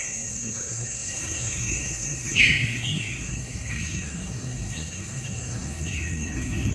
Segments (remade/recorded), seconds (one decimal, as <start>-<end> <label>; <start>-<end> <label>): 0.0-6.7 remade